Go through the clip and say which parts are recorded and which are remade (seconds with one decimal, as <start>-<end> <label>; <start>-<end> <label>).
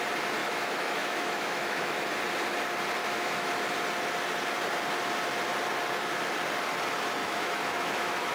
0.0-0.4 recorded; 0.4-2.0 remade; 2.0-3.0 recorded; 3.0-3.5 remade; 3.5-7.2 recorded; 7.2-8.3 remade